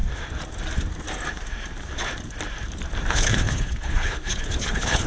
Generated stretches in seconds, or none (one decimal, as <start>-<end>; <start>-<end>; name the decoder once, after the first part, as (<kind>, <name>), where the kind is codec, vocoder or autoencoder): 3.1-5.1 (codec, HILCodec)